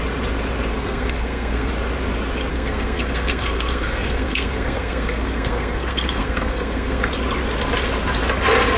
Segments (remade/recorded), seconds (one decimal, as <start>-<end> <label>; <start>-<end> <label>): 0.0-0.7 recorded; 0.7-1.7 remade; 1.7-2.5 recorded; 2.5-7.1 remade; 7.1-8.8 recorded